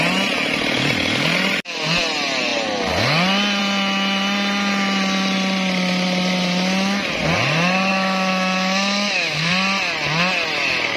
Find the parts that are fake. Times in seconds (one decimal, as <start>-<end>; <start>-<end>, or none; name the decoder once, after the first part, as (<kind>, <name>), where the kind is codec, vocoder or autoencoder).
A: 7.9-9.5 (autoencoder, DAC-VAE)